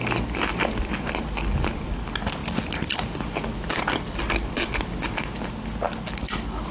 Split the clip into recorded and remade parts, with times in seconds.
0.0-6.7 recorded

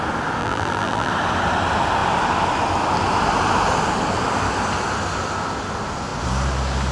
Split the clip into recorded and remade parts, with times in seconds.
0.0-0.4 recorded; 0.4-1.1 remade; 1.1-6.9 recorded

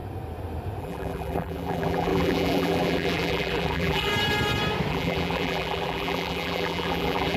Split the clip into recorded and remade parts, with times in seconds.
0.0-0.8 recorded; 0.8-4.1 remade; 4.1-4.9 recorded; 4.9-7.4 remade